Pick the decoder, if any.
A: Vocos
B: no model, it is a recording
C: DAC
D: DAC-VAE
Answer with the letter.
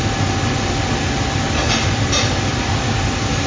B